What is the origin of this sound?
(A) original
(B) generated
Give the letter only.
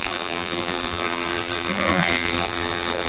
B